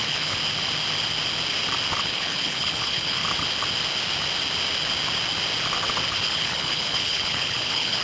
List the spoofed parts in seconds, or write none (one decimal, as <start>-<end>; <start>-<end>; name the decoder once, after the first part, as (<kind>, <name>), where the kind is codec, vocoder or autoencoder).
0.0-0.4 (codec, HILCodec); 2.0-3.2; 6.2-8.0